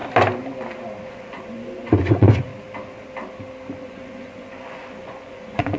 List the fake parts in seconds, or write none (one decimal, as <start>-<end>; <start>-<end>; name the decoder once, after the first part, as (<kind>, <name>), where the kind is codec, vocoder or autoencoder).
1.1-2.5 (vocoder, Vocos); 3.8-5.8